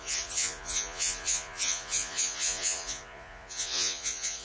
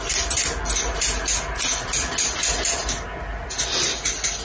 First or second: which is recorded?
second